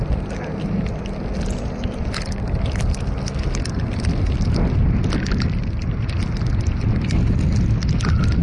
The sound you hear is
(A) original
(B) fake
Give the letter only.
A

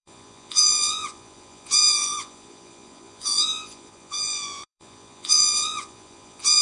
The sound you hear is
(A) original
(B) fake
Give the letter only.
B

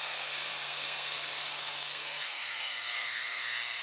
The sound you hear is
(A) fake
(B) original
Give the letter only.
A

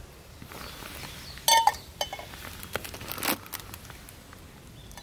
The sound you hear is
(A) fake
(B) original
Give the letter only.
B